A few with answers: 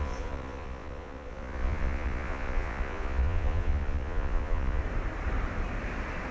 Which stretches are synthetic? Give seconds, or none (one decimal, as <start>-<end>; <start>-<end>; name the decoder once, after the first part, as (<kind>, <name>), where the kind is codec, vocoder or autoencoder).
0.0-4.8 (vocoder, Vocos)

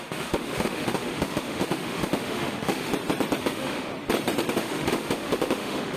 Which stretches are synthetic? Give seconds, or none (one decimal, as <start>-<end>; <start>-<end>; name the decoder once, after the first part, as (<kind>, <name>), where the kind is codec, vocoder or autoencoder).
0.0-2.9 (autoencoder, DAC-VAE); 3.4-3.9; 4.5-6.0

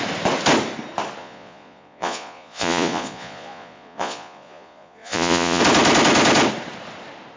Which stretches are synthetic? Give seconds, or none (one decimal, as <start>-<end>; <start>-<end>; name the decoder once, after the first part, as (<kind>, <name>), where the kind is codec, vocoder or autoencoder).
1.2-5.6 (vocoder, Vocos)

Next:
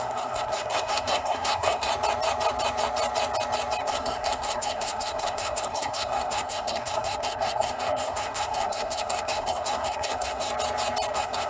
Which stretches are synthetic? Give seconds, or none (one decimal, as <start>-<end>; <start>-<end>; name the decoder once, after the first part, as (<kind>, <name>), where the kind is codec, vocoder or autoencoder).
0.0-1.9 (codec, SNAC); 3.8-10.5; 11.1-11.5

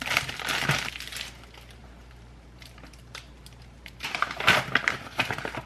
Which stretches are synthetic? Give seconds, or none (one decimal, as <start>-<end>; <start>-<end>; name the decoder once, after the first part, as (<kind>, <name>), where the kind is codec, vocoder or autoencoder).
1.8-5.2 (vocoder, BigVGAN v2)

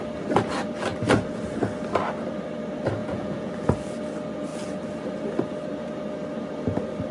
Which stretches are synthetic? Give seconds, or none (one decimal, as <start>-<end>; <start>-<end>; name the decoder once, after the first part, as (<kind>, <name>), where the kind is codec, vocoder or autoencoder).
3.0-3.5 (vocoder, Vocos)

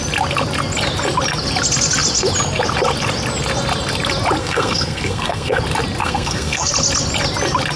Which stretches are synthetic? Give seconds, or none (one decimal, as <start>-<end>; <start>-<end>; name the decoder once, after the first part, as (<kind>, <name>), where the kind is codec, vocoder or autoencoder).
4.4-5.6 (codec, SNAC); 6.0-6.7